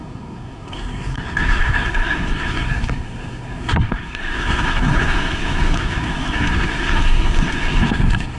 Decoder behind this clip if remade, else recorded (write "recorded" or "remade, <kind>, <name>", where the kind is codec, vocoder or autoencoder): remade, codec, SNAC